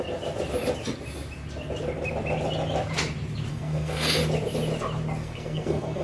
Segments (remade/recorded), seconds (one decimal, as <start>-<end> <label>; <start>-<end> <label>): 0.0-3.5 recorded; 3.5-4.2 remade; 4.2-5.2 recorded; 5.2-6.0 remade